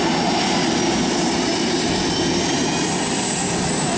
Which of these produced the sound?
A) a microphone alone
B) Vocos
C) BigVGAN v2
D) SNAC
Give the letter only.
A